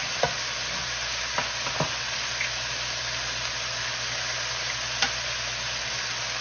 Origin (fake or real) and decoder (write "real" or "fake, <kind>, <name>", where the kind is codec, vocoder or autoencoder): real